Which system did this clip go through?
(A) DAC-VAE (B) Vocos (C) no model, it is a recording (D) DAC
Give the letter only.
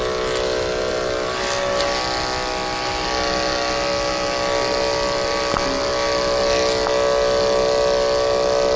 C